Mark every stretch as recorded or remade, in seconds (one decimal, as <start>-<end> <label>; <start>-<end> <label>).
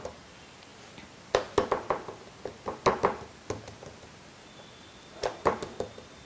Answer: 0.0-6.3 recorded